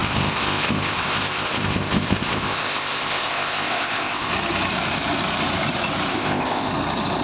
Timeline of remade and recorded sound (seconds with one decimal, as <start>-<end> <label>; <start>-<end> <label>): 0.0-4.3 remade; 4.3-6.1 recorded; 6.1-6.7 remade; 6.7-7.2 recorded